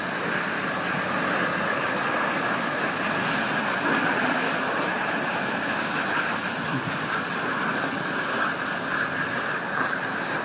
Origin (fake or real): real